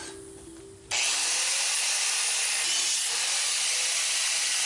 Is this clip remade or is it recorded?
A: recorded